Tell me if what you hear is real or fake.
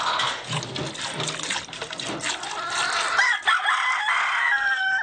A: real